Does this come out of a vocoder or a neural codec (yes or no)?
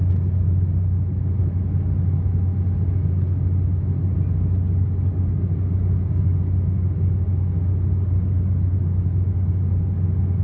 no